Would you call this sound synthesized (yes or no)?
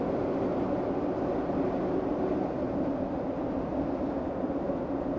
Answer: no